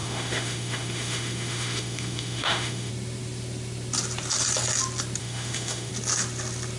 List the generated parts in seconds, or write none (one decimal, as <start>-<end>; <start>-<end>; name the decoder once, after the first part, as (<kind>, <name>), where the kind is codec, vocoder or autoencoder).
0.0-2.9 (autoencoder, DAC-VAE); 5.2-5.9